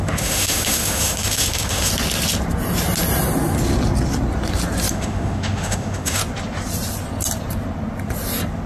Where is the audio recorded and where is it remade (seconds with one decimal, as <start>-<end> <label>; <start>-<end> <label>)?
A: 0.0-1.9 remade; 1.9-4.9 recorded; 4.9-6.2 remade; 6.2-8.7 recorded